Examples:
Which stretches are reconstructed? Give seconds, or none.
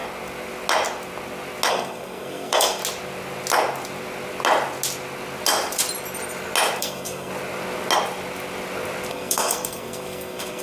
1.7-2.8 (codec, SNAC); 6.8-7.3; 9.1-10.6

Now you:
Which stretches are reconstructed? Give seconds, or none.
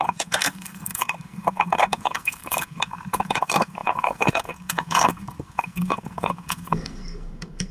0.0-7.7 (codec, SNAC)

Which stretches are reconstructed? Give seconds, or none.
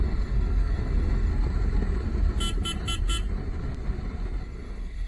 0.0-1.3 (codec, SNAC); 4.4-5.1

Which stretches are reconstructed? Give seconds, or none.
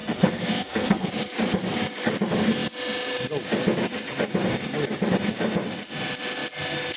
0.0-1.1 (codec, SNAC)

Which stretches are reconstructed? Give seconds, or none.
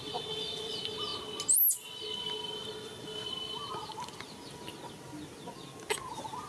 none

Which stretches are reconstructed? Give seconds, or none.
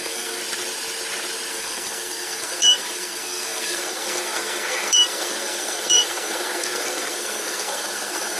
0.0-0.4 (codec, SNAC); 1.5-8.4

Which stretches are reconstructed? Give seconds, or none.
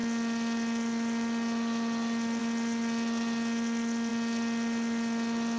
none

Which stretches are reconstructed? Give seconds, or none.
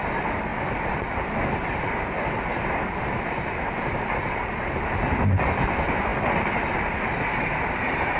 none